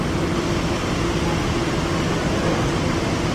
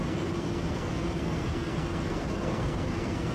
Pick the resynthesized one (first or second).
second